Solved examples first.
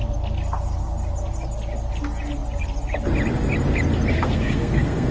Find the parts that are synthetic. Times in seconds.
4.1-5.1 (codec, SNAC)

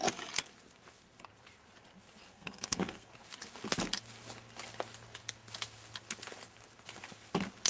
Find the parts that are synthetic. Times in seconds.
2.3-3.1 (codec, SNAC)

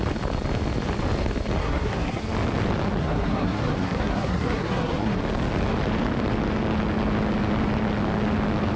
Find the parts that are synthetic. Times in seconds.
1.6-2.2 (codec, SNAC); 3.0-5.2

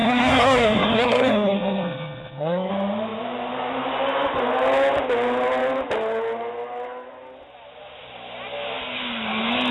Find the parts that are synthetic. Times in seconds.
0.0-2.7 (codec, SNAC)